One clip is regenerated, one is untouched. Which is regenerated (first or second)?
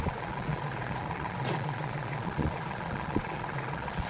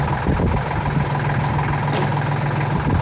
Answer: first